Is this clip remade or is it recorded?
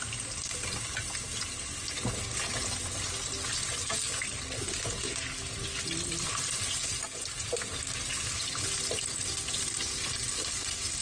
recorded